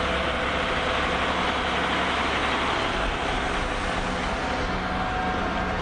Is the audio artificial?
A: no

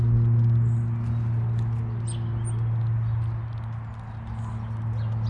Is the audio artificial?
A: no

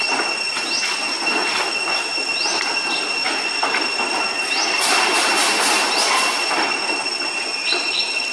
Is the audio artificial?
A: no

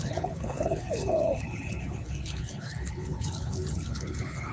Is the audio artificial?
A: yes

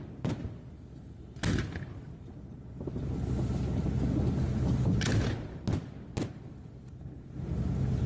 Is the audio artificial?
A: no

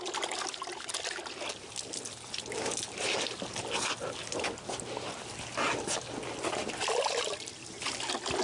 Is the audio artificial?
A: no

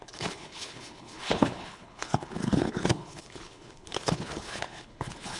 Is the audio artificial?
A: yes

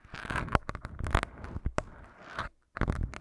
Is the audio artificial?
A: no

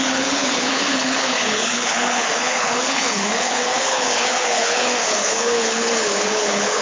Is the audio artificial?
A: yes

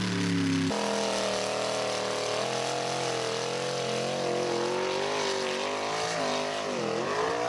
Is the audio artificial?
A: no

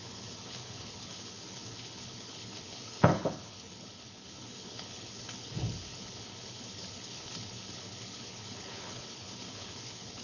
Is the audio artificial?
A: yes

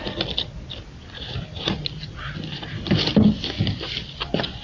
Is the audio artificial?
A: no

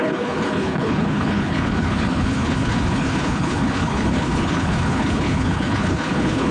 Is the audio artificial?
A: yes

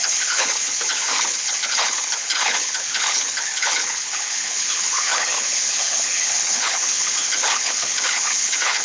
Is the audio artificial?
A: yes